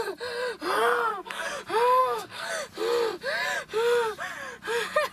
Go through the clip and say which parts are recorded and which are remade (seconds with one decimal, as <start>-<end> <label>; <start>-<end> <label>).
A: 0.0-1.1 recorded; 1.1-1.6 remade; 1.6-2.0 recorded; 2.0-2.5 remade; 2.5-5.1 recorded